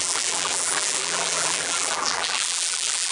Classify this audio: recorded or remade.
remade